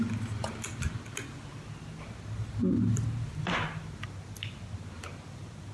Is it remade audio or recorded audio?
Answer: recorded